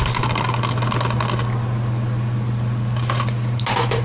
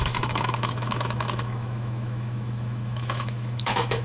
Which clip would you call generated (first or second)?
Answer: second